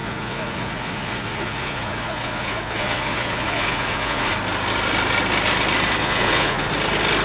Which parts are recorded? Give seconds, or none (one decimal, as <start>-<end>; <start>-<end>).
4.3-6.0; 6.7-7.2